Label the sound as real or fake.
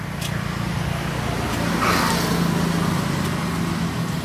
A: real